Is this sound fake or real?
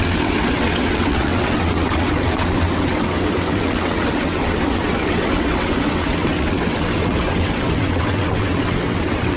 fake